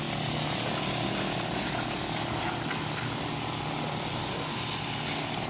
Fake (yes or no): no